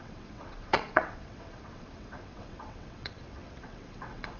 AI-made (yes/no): yes